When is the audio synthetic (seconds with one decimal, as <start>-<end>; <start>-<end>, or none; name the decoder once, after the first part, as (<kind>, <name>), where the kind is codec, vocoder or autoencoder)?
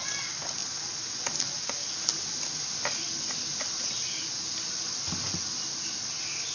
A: none